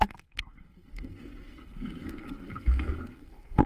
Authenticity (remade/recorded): remade